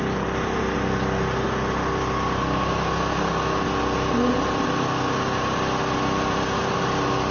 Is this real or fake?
real